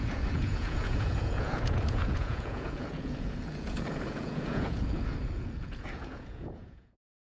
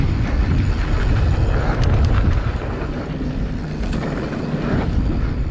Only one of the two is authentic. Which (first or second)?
second